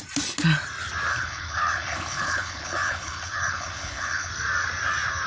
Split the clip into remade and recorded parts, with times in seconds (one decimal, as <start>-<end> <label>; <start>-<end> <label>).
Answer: 0.0-1.1 recorded; 1.1-4.3 remade; 4.3-5.3 recorded